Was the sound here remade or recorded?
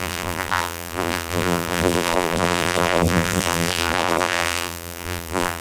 remade